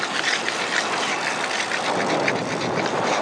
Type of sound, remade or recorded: recorded